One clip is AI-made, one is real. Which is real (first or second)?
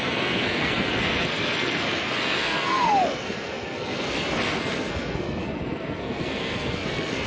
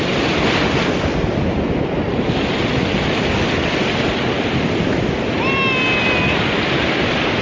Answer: second